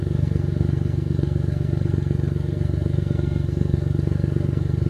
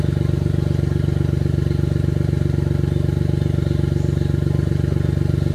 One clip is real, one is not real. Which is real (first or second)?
second